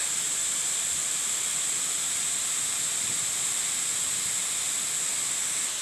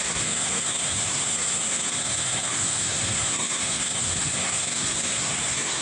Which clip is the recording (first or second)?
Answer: first